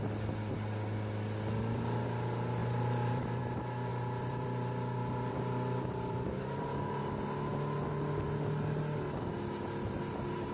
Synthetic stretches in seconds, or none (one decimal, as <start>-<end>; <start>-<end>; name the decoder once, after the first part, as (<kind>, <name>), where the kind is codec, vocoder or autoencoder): 2.6-3.4 (vocoder, BigVGAN v2); 3.9-7.1